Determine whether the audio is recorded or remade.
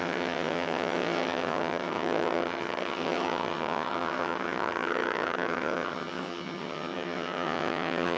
remade